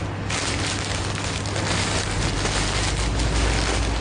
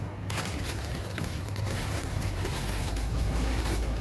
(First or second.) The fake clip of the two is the second